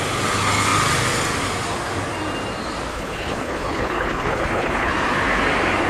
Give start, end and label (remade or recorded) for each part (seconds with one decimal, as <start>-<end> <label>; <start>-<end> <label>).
0.0-2.9 recorded; 2.9-4.9 remade; 4.9-5.9 recorded